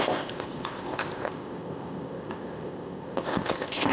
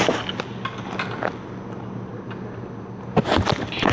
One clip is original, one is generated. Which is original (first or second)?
second